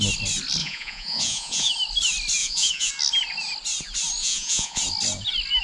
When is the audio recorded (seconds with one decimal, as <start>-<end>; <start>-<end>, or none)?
0.0-0.6; 1.7-2.4; 2.9-4.2; 4.8-5.6